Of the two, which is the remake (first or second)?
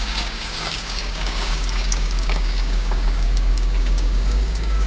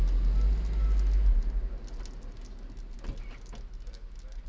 first